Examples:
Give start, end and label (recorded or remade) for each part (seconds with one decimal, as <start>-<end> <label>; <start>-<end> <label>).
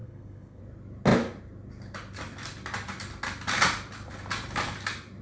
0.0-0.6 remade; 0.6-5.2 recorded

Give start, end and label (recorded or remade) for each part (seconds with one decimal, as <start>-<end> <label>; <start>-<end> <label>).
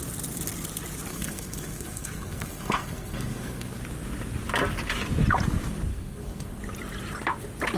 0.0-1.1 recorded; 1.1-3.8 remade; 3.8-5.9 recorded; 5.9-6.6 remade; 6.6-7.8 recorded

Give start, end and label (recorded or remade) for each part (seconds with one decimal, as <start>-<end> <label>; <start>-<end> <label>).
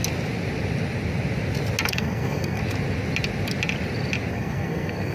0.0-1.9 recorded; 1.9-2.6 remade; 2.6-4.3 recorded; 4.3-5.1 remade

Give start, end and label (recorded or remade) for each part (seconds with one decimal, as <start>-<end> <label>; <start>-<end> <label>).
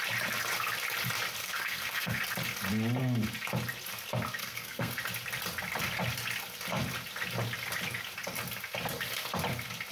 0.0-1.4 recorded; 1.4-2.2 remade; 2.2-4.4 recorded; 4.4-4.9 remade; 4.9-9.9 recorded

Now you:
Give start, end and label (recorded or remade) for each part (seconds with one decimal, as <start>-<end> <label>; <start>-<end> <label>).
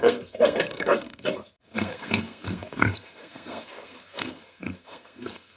0.0-5.6 remade